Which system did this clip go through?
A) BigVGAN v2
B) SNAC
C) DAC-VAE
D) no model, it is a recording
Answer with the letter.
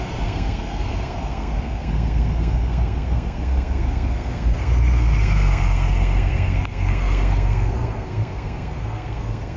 B